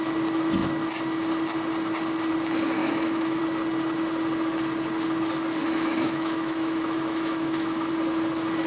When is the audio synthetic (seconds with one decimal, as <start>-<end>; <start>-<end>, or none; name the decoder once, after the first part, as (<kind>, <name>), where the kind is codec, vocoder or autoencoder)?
2.8-3.4 (autoencoder, DAC-VAE); 5.6-7.9